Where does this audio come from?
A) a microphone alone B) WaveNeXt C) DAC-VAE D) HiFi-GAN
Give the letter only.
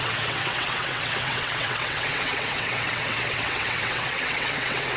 B